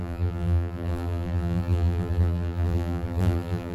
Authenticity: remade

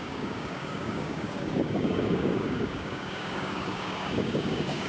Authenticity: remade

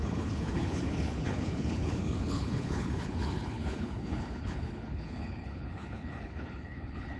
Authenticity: remade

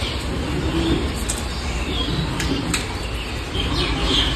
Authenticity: recorded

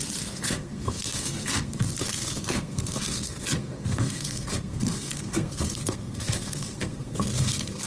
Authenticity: remade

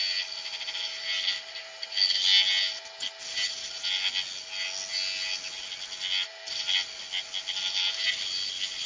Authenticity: recorded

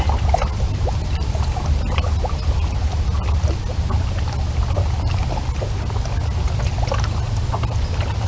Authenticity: recorded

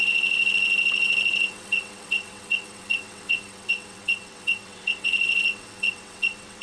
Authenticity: remade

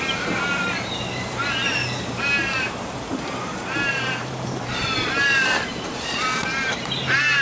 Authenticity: remade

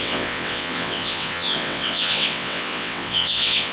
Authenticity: remade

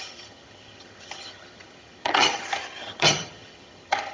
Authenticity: remade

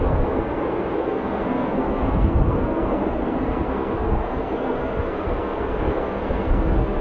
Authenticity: remade